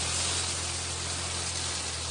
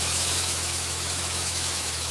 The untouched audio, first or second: first